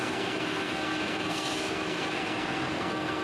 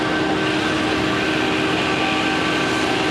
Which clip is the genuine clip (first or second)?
second